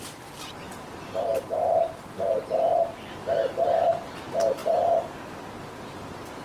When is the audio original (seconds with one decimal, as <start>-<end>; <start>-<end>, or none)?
0.0-6.4